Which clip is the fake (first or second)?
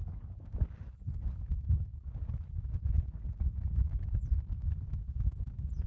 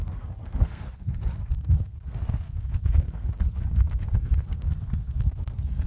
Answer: second